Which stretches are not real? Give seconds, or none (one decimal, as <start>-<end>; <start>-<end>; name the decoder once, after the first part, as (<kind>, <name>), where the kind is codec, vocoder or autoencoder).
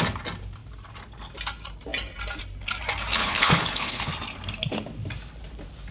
3.2-4.1 (codec, HILCodec)